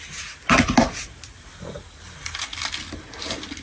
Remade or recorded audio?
recorded